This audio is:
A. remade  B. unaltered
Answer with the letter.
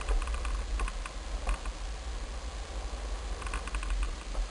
B